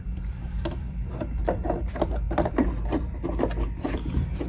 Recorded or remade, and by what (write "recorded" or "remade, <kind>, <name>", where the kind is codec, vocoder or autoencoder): remade, vocoder, BigVGAN v2